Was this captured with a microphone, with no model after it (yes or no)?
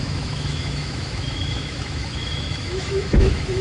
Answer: no